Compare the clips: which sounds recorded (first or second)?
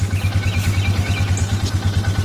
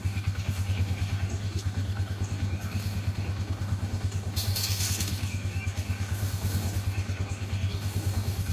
first